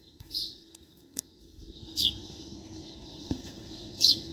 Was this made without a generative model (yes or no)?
no